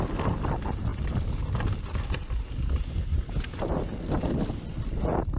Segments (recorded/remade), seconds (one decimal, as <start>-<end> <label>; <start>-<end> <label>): 0.0-5.4 recorded